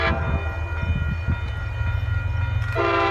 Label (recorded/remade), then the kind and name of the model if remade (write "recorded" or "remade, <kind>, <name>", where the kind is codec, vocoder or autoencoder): recorded